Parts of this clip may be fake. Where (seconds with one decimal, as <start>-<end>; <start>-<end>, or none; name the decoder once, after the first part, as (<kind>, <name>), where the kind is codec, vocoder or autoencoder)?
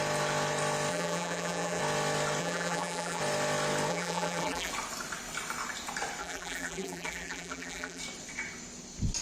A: 0.9-1.8 (vocoder, BigVGAN v2); 2.4-3.2; 3.9-4.7; 6.2-8.0